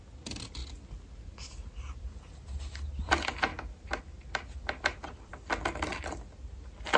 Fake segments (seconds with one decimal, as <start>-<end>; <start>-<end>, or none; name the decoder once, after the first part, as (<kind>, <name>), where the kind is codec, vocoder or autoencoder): none